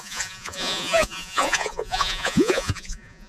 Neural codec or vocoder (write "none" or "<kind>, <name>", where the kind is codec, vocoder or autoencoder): vocoder, Vocos